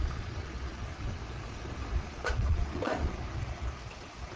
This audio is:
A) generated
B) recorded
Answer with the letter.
A